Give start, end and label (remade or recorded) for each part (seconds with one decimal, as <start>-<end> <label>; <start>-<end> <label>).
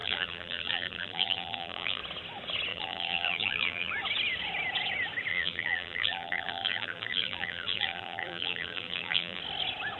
0.0-2.0 remade; 2.0-2.7 recorded; 2.7-3.9 remade; 3.9-5.3 recorded; 5.3-9.4 remade; 9.4-10.0 recorded